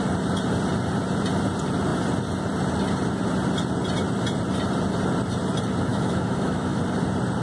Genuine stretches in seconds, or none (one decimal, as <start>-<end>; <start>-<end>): 0.0-5.9; 6.8-7.4